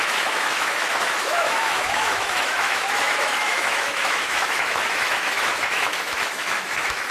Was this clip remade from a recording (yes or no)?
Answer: yes